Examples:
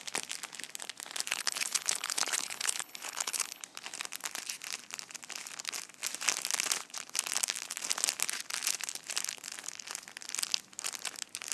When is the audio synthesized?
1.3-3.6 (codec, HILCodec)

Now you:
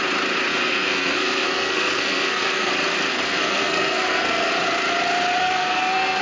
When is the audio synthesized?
0.5-2.7 (codec, SNAC); 3.1-4.5; 5.4-6.2

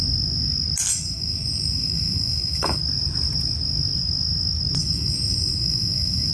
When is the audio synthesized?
0.9-2.8 (autoencoder, DAC-VAE); 4.8-6.3

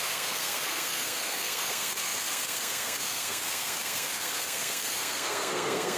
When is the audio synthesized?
0.0-6.0 (codec, SNAC)

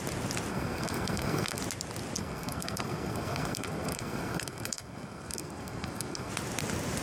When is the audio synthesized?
0.5-1.6 (codec, SNAC); 2.2-6.3

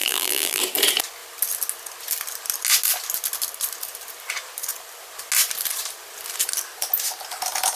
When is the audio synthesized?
0.0-0.6 (vocoder, BigVGAN v2)

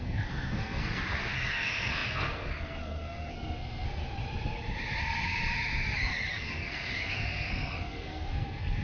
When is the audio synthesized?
0.0-4.0 (codec, SNAC); 5.0-5.4; 6.3-8.8